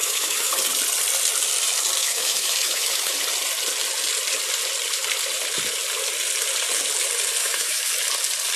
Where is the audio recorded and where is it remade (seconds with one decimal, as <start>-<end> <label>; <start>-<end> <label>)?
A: 0.0-0.5 remade; 0.5-2.0 recorded; 2.0-3.1 remade; 3.1-7.4 recorded; 7.4-7.9 remade; 7.9-8.6 recorded